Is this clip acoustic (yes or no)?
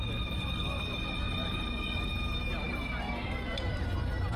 yes